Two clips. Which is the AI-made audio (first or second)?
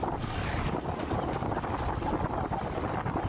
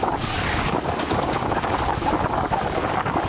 second